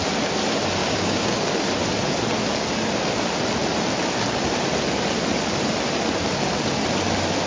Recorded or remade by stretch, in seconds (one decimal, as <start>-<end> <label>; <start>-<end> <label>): 0.0-0.8 recorded; 0.8-1.4 remade; 1.4-7.5 recorded

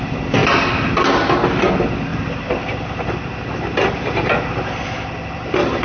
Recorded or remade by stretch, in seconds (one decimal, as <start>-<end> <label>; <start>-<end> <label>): 0.0-5.8 recorded

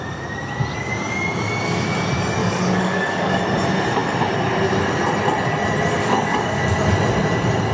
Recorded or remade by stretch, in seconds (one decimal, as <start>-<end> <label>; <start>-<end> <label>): 0.0-2.4 recorded; 2.4-3.4 remade; 3.4-6.0 recorded; 6.0-6.6 remade; 6.6-7.7 recorded

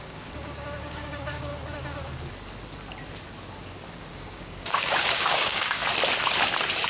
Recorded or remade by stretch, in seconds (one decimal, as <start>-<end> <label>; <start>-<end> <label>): 0.0-1.5 remade; 1.5-4.1 recorded; 4.1-5.8 remade; 5.8-6.9 recorded

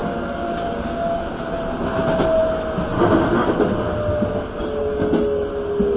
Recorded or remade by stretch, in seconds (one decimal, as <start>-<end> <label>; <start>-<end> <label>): 0.0-1.5 remade; 1.5-4.8 recorded; 4.8-5.5 remade; 5.5-6.0 recorded

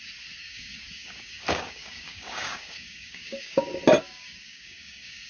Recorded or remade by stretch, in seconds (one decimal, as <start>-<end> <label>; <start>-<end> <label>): 0.0-0.4 recorded; 0.4-3.6 remade; 3.6-4.1 recorded; 4.1-5.3 remade

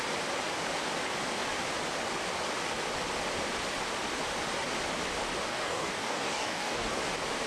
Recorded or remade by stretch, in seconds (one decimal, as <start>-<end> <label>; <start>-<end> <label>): 0.0-5.5 recorded; 5.5-7.0 remade; 7.0-7.5 recorded